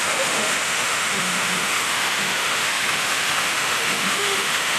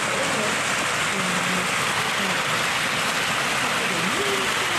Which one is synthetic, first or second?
first